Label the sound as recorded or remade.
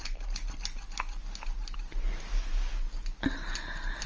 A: recorded